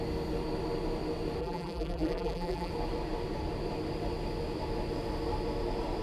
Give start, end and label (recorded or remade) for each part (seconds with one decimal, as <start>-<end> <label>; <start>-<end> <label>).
0.0-1.4 recorded; 1.4-2.7 remade; 2.7-6.0 recorded